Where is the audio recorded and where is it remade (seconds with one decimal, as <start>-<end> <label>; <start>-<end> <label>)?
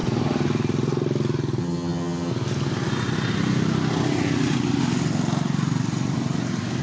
0.0-1.6 recorded; 1.6-2.3 remade; 2.3-6.8 recorded